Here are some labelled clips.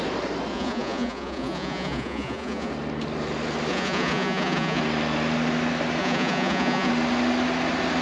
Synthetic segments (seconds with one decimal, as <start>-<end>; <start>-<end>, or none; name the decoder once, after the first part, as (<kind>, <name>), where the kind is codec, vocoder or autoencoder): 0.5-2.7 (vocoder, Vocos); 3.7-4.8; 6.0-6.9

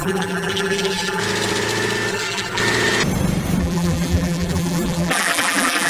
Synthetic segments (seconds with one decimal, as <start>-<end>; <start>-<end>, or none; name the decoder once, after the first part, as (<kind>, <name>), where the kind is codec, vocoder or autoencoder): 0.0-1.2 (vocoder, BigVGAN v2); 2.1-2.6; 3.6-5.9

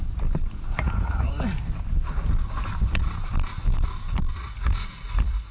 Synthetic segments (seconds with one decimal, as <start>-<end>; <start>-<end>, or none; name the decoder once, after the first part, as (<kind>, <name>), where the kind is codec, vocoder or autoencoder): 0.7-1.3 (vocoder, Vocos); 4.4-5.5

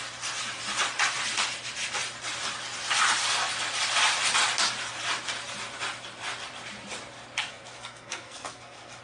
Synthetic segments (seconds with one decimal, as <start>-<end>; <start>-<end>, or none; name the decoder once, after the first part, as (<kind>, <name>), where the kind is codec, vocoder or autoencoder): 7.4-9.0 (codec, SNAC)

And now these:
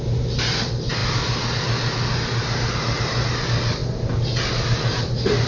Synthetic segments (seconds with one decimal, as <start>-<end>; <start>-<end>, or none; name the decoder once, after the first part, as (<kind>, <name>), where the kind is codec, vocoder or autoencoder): none

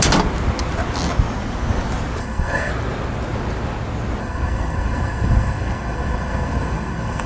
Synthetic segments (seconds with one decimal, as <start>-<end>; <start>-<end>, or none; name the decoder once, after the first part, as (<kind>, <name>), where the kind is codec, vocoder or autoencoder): 2.2-2.7 (codec, SNAC); 4.2-7.3

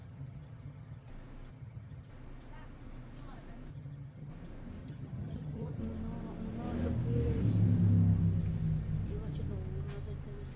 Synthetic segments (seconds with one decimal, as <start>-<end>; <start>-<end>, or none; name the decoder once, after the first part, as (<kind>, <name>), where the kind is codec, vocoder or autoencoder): 0.0-1.1 (vocoder, HiFi-GAN); 1.5-2.1; 3.7-4.3; 4.8-5.8